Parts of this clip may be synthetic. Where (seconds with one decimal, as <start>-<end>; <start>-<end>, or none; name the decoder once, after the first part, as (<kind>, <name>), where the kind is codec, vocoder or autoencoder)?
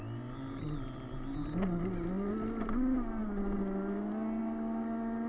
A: none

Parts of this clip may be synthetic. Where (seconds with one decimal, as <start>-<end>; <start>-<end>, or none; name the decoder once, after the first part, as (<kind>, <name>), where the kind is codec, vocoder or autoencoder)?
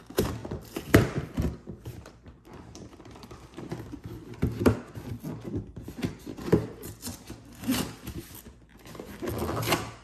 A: 1.9-4.0 (vocoder, BigVGAN v2)